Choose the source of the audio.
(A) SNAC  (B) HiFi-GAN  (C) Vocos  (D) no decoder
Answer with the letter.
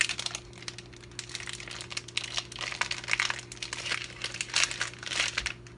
D